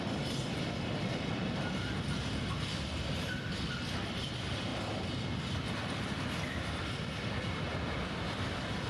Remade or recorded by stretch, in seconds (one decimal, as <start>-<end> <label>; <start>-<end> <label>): 0.0-8.9 recorded